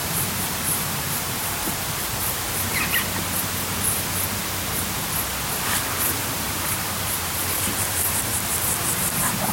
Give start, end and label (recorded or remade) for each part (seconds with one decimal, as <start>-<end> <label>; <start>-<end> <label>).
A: 0.0-2.7 remade; 2.7-6.2 recorded; 6.2-9.5 remade